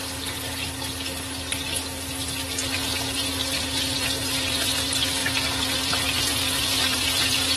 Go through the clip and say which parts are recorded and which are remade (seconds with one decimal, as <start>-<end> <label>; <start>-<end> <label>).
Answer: 0.0-7.6 recorded